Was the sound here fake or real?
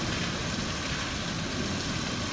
real